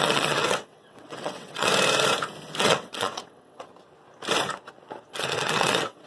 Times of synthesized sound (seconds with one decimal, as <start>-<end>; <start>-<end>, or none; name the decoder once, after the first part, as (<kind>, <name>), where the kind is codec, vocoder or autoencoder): 0.0-1.7 (vocoder, WaveNeXt); 2.6-3.7; 5.1-6.1